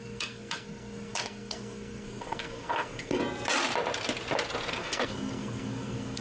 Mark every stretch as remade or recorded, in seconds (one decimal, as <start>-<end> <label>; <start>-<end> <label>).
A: 0.0-3.2 remade; 3.2-4.7 recorded; 4.7-6.2 remade